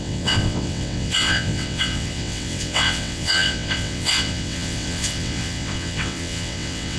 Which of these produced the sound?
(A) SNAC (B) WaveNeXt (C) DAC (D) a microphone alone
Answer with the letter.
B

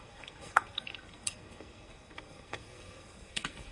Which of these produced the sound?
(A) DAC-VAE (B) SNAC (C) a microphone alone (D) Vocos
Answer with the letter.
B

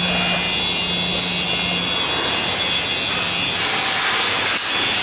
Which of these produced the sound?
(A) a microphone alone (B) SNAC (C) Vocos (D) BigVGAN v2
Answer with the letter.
A